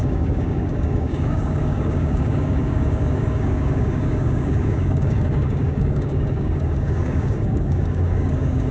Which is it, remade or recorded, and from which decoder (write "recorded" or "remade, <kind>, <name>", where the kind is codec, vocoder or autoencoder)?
remade, codec, DAC